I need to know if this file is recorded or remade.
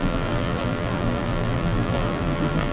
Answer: remade